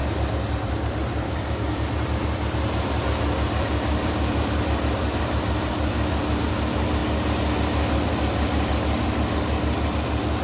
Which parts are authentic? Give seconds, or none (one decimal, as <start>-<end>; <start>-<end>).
0.0-0.5; 7.0-8.1